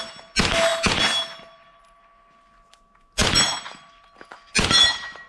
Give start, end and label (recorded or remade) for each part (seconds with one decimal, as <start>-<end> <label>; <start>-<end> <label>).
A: 0.0-5.3 recorded